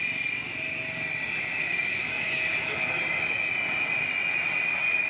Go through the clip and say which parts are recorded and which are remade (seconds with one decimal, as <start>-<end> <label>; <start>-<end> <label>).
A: 0.0-1.6 recorded; 1.6-3.0 remade; 3.0-5.1 recorded